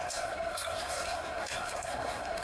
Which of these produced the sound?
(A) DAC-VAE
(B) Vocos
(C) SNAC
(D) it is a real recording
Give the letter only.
C